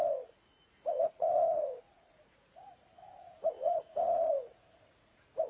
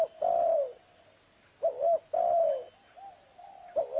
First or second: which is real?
second